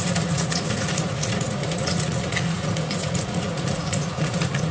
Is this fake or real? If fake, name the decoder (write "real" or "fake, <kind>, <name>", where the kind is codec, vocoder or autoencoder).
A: fake, vocoder, Vocos